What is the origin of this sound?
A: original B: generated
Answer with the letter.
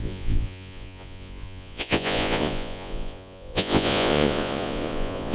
B